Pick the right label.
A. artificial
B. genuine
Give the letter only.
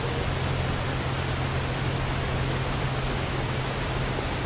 B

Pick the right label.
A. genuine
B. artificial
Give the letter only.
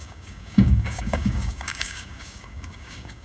B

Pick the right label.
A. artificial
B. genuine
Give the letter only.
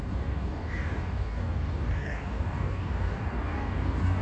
A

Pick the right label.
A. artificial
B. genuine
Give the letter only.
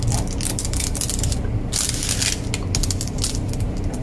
B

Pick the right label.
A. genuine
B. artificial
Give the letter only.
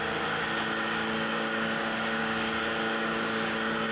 B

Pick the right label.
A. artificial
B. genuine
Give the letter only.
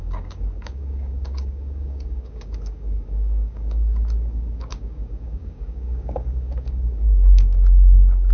A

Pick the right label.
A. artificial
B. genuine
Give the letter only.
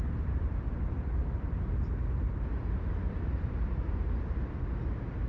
B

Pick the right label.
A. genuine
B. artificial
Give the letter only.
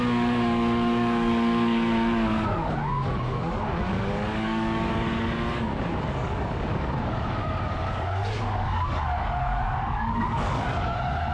B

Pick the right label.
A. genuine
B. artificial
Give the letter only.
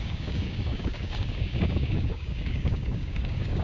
B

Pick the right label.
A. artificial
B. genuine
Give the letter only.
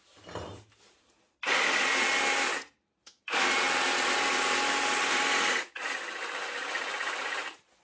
B